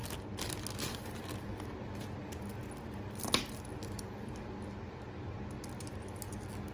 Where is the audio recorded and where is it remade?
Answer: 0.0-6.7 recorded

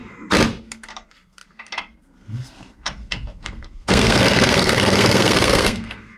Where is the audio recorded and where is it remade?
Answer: 0.0-0.6 recorded; 0.6-6.2 remade

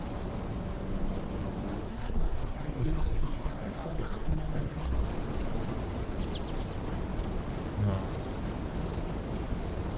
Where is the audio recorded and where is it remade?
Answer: 0.0-1.9 recorded; 1.9-4.9 remade; 4.9-10.0 recorded

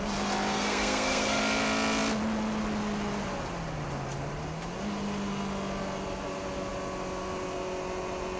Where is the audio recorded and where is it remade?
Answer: 0.0-0.5 recorded; 0.5-1.4 remade; 1.4-8.4 recorded

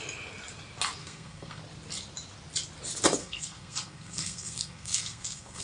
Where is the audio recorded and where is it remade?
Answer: 0.0-1.0 recorded; 1.0-1.6 remade; 1.6-3.2 recorded; 3.2-5.6 remade

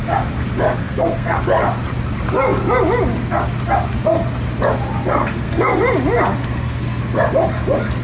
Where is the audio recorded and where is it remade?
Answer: 0.0-0.8 recorded; 0.8-1.4 remade; 1.4-5.1 recorded; 5.1-5.8 remade; 5.8-6.4 recorded; 6.4-7.0 remade; 7.0-8.0 recorded